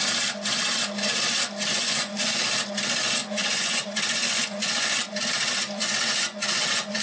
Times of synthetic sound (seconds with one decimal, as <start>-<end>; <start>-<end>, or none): 1.7-2.4; 3.2-5.1; 5.8-7.0